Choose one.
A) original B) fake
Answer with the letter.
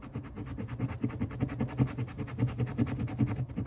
A